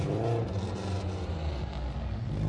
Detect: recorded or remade recorded